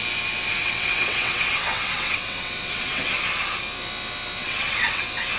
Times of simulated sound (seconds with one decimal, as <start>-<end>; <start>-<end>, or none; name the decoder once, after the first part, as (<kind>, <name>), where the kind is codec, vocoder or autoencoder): 0.6-3.1 (vocoder, WaveNeXt); 4.4-5.0